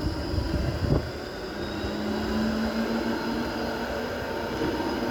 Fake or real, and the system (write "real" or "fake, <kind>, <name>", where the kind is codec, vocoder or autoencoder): real